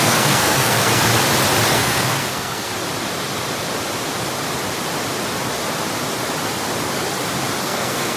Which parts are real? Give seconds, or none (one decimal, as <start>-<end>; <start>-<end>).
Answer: 1.1-1.7; 2.7-7.6